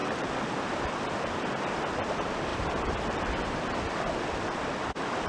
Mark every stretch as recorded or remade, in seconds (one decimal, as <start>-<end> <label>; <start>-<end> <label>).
0.0-1.9 remade; 1.9-2.5 recorded; 2.5-4.6 remade; 4.6-5.3 recorded